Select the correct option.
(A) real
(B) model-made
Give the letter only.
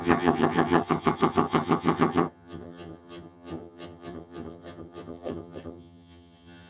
B